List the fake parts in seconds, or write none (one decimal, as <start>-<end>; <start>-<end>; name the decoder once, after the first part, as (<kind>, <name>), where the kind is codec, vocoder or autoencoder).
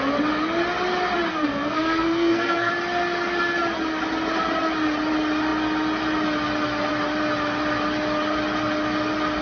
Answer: 1.3-2.7 (codec, SNAC)